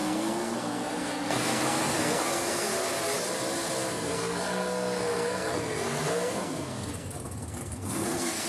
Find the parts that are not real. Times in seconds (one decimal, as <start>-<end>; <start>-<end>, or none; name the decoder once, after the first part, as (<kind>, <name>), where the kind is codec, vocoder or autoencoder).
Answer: 0.0-2.7 (codec, SNAC); 3.9-8.5